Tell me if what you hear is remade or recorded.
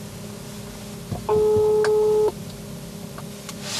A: recorded